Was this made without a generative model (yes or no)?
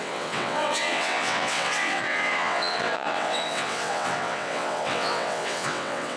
no